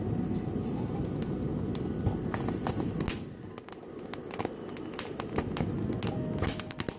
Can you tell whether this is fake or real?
real